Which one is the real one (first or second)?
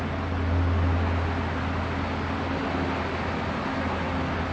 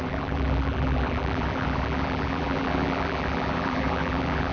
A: first